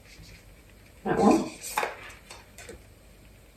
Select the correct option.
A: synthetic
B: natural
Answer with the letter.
B